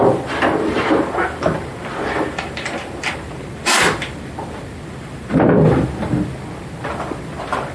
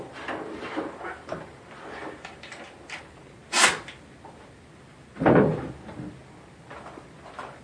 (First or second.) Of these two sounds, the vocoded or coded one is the first